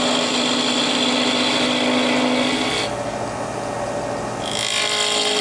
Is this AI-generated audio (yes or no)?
no